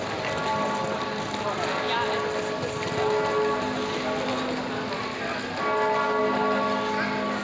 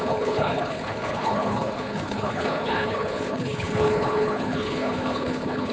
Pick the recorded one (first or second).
first